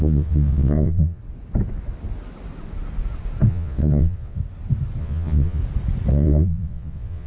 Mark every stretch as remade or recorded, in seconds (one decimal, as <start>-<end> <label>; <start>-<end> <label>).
0.0-1.2 remade; 1.2-3.5 recorded; 3.5-4.4 remade; 4.4-5.0 recorded; 5.0-5.6 remade; 5.6-6.1 recorded; 6.1-7.3 remade